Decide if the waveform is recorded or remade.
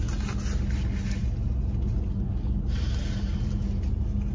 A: recorded